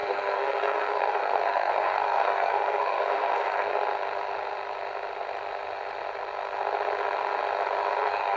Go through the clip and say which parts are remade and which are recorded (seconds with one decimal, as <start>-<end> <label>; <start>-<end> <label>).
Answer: 0.0-3.7 remade; 3.7-8.0 recorded; 8.0-8.4 remade